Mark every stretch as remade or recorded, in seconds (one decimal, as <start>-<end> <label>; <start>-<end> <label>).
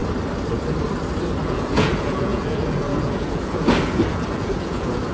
0.0-1.4 recorded; 1.4-5.1 remade